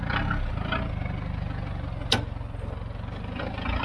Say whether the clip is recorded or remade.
recorded